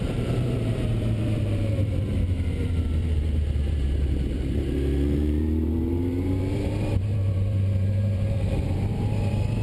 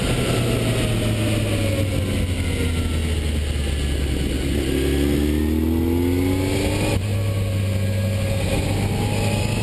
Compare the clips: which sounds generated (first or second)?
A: first